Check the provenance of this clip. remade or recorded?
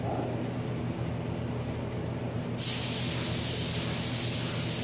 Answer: recorded